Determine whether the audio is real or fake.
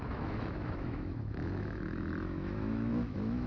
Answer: fake